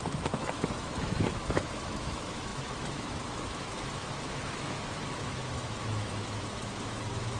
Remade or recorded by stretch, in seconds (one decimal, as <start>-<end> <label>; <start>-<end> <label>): 0.0-7.4 remade